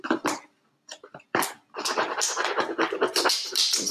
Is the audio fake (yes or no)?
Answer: yes